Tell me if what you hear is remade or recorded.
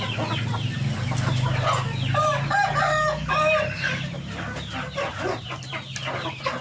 recorded